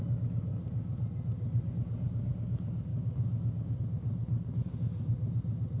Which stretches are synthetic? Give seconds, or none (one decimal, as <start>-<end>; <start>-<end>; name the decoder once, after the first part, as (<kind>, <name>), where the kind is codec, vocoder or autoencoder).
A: 2.9-3.8 (codec, DAC)